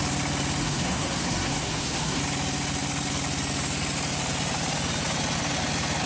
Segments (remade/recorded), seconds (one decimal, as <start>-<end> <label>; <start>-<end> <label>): 0.0-0.6 recorded; 0.6-2.2 remade; 2.2-6.1 recorded